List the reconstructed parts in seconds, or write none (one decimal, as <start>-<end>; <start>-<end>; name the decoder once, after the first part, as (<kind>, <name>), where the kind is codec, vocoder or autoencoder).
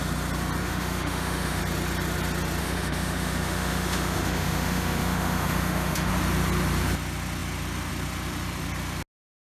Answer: 0.6-1.6 (autoencoder, DAC-VAE); 2.6-6.1